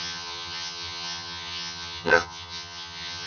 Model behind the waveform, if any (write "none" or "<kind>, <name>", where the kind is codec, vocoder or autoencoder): vocoder, HiFi-GAN